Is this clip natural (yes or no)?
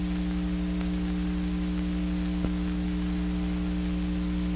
yes